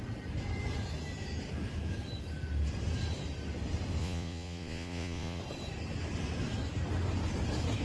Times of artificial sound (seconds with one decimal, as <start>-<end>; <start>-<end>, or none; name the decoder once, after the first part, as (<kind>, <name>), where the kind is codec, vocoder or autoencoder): 4.0-5.4 (vocoder, Vocos)